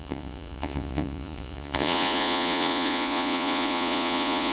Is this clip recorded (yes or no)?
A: no